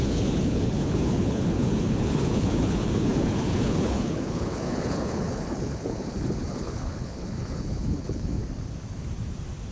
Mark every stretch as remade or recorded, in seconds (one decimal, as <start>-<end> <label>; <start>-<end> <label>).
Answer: 0.0-8.4 remade; 8.4-9.7 recorded